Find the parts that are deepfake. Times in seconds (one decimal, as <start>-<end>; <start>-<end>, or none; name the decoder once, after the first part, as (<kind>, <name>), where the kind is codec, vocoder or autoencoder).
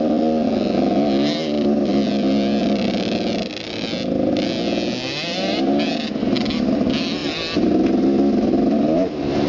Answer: none